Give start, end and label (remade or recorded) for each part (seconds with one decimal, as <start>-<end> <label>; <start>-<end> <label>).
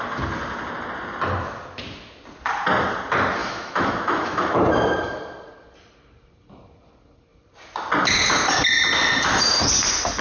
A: 0.0-3.4 recorded; 3.4-4.6 remade; 4.6-10.2 recorded